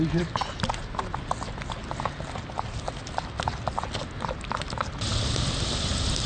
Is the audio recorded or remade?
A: recorded